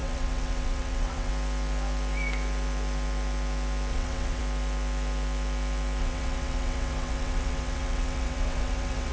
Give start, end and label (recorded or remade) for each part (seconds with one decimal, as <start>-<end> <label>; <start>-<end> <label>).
0.0-1.3 remade; 1.3-3.9 recorded; 3.9-4.4 remade; 4.4-6.0 recorded; 6.0-9.1 remade